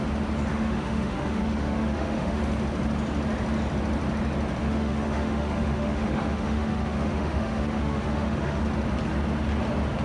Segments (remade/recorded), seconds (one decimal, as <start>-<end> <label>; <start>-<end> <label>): 0.0-0.5 recorded; 0.5-2.4 remade; 2.4-4.6 recorded; 4.6-8.6 remade; 8.6-10.0 recorded